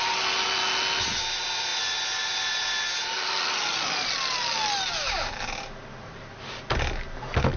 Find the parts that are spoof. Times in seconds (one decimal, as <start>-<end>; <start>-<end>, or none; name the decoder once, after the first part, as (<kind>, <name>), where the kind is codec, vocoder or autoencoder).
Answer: none